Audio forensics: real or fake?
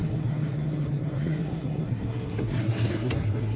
fake